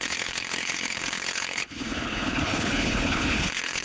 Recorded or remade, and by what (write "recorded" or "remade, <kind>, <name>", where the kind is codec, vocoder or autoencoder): remade, codec, HILCodec